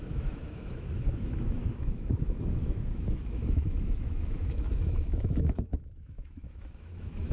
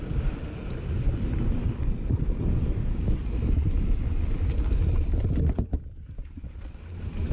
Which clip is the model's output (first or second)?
first